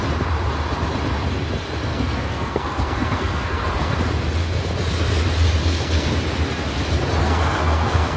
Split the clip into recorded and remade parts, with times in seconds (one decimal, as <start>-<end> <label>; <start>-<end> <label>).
0.0-1.9 recorded; 1.9-4.0 remade; 4.0-5.6 recorded; 5.6-6.1 remade; 6.1-7.2 recorded; 7.2-8.2 remade